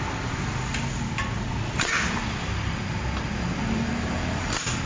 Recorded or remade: recorded